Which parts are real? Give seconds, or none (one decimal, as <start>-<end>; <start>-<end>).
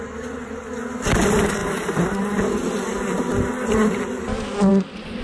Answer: 0.0-5.2